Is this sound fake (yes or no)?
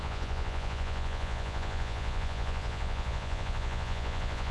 yes